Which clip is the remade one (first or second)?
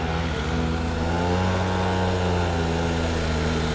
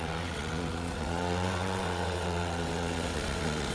second